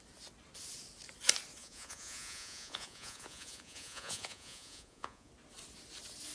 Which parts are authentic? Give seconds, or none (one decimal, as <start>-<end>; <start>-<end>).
0.0-1.6; 5.3-6.3